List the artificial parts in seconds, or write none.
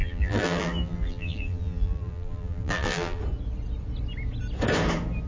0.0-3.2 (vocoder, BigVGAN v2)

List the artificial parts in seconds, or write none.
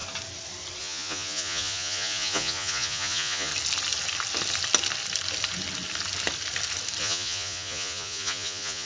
0.8-3.5 (vocoder, Vocos); 7.0-8.9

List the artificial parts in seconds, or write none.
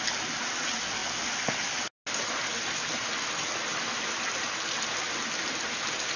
none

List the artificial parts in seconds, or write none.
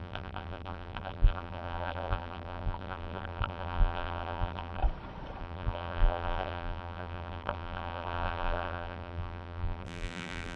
0.0-4.8 (vocoder, BigVGAN v2); 5.4-10.6